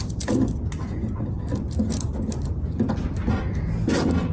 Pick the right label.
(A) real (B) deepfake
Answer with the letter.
A